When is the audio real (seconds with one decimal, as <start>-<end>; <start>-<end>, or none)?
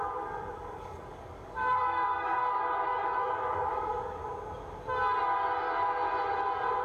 4.2-6.8